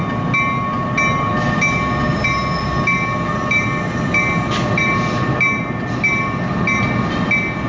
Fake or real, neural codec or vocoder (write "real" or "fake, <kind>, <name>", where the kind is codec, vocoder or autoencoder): real